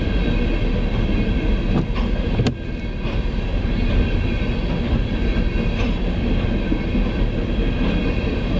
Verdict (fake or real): real